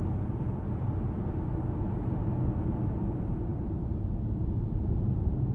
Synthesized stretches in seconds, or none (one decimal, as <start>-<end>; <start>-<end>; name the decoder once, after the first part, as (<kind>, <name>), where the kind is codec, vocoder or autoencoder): none